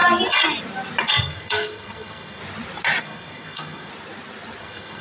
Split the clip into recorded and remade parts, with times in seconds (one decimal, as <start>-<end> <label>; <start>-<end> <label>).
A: 0.0-1.1 recorded; 1.1-2.4 remade; 2.4-3.0 recorded; 3.0-3.9 remade; 3.9-4.6 recorded; 4.6-5.0 remade